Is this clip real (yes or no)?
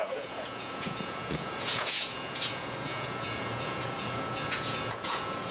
no